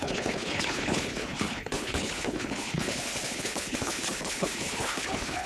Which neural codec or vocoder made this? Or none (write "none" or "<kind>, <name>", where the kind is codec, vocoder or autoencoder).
codec, HILCodec